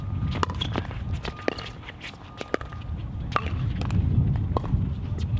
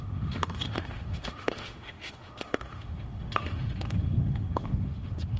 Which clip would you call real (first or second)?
first